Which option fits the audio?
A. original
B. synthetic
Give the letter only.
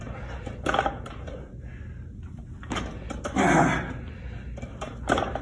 A